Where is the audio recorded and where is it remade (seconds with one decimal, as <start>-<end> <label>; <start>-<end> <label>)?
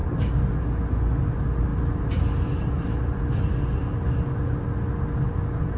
0.0-5.8 recorded